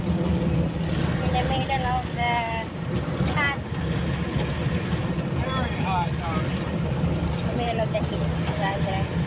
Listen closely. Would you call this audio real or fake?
real